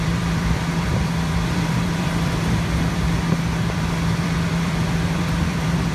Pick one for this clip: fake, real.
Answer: fake